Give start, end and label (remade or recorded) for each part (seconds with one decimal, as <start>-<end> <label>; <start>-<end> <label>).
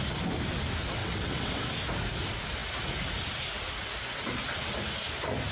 0.0-1.0 recorded; 1.0-1.7 remade; 1.7-5.5 recorded